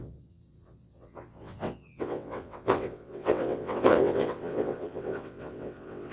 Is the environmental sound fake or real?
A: fake